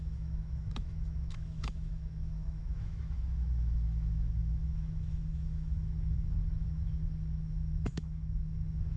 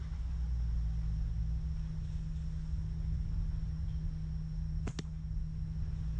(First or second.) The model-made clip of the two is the first